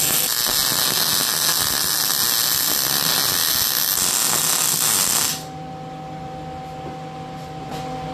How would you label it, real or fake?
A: real